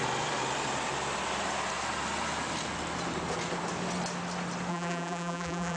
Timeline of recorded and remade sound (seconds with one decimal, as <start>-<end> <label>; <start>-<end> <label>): 0.0-4.7 recorded; 4.7-5.8 remade